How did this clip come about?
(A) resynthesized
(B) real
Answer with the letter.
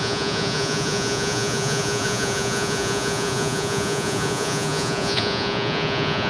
A